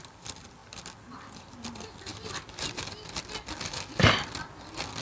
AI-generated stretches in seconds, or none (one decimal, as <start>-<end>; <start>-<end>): 0.6-1.5; 2.1-2.7